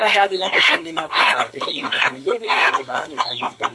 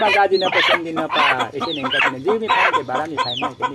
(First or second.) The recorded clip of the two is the second